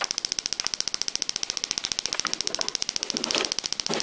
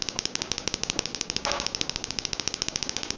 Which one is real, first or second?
first